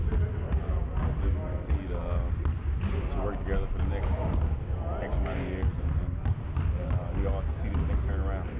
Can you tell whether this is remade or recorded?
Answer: recorded